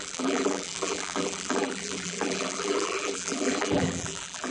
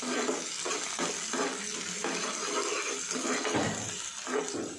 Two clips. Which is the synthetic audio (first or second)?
first